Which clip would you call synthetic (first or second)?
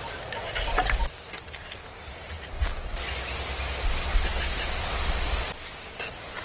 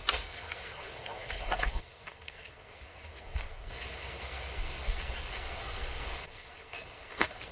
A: second